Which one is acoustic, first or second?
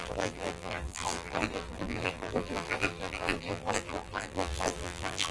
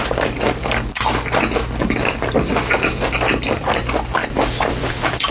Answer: second